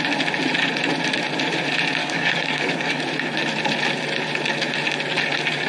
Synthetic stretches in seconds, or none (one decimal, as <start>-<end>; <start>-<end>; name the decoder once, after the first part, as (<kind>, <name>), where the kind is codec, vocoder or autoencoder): 2.0-3.0 (codec, DAC)